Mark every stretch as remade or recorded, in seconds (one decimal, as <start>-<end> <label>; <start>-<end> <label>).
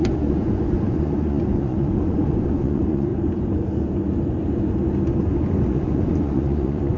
0.0-3.1 remade; 3.1-5.7 recorded; 5.7-7.0 remade